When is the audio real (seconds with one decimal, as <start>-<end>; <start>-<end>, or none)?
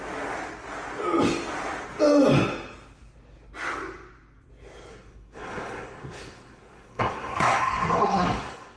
0.0-4.9